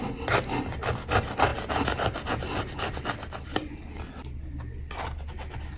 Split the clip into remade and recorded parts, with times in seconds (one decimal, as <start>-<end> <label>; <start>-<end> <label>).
0.0-5.8 recorded